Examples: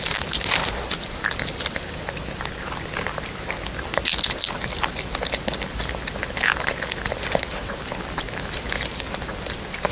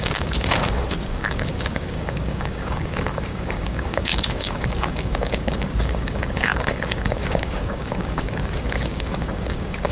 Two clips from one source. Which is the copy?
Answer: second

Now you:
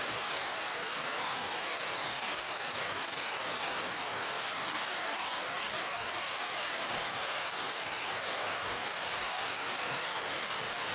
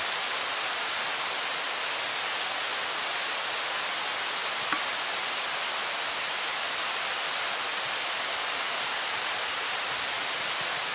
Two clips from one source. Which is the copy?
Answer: first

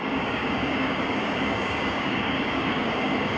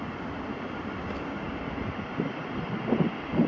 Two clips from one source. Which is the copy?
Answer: first